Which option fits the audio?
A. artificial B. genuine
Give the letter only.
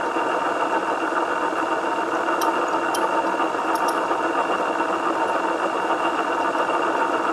B